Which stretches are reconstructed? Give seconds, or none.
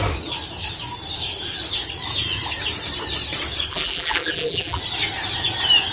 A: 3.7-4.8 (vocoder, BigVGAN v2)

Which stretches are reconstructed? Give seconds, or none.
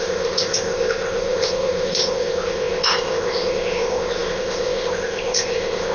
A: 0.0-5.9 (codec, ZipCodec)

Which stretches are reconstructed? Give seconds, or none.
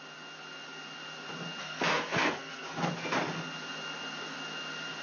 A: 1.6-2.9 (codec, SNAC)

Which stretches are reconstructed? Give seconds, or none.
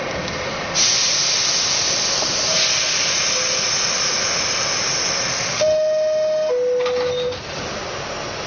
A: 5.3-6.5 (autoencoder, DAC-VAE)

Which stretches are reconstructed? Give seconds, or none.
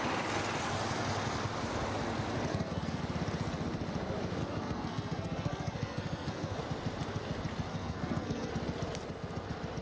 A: 2.5-3.0 (codec, SNAC); 4.4-6.6; 7.7-8.5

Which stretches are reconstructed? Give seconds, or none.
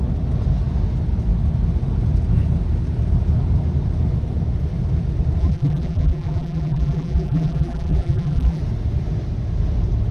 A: 5.4-8.6 (vocoder, BigVGAN v2)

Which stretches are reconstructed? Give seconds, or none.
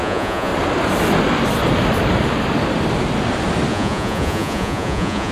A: 0.0-0.5 (vocoder, Vocos); 3.7-5.3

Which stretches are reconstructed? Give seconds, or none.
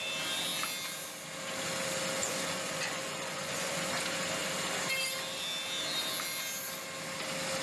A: 2.2-3.9 (vocoder, Vocos)